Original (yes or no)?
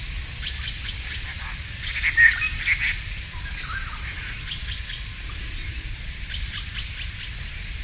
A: yes